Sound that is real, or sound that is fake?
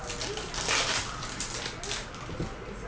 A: real